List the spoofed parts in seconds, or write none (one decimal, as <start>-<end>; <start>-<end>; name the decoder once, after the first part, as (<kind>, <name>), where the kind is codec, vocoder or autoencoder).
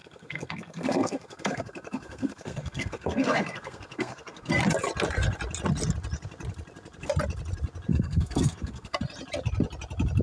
0.0-4.5 (codec, SNAC); 7.9-9.0